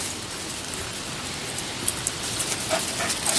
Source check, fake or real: real